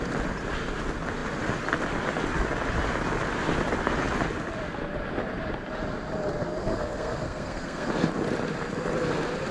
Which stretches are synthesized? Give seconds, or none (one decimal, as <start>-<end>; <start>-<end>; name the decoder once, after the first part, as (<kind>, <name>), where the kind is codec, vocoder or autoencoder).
6.6-7.9 (codec, SNAC)